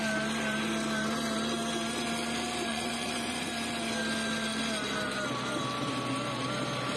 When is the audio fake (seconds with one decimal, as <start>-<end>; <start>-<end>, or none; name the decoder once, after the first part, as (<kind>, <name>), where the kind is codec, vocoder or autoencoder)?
2.7-3.5 (vocoder, Vocos)